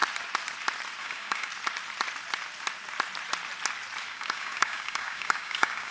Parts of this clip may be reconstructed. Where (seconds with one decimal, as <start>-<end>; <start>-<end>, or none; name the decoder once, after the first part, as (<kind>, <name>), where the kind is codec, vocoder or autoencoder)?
1.0-1.5 (codec, DAC); 4.1-5.9